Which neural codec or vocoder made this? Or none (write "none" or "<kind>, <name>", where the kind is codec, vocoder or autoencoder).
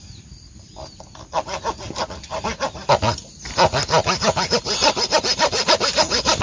none